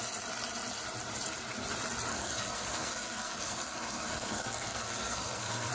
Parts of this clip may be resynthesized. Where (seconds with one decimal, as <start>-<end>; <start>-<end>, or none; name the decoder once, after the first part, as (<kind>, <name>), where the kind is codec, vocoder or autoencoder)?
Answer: 2.1-5.7 (codec, SNAC)